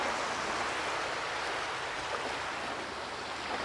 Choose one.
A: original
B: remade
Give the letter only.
A